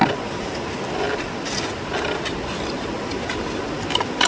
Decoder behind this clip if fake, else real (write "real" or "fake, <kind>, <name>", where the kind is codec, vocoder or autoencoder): real